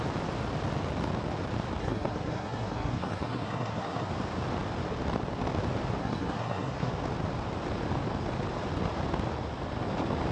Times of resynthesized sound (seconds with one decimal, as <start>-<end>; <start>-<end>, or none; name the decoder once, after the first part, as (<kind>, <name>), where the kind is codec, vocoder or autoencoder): 1.8-4.1 (codec, SNAC); 6.0-6.9